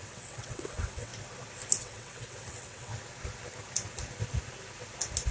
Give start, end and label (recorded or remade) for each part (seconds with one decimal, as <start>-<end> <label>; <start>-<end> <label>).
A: 0.0-1.1 remade; 1.1-1.8 recorded; 1.8-2.9 remade; 2.9-5.3 recorded